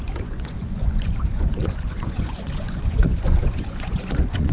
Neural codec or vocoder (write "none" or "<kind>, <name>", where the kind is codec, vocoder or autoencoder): vocoder, Vocos